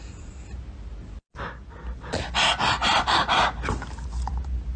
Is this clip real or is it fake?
real